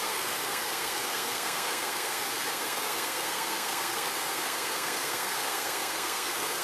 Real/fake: fake